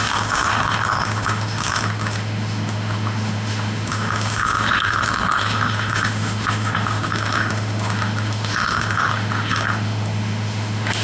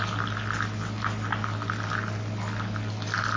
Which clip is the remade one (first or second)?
first